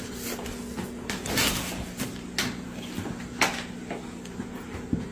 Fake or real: real